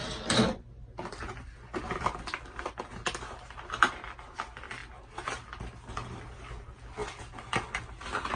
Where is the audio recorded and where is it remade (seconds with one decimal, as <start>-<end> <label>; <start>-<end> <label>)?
0.0-8.4 recorded